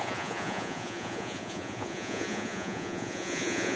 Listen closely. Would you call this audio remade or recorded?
remade